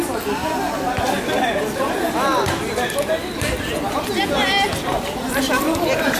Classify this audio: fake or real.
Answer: real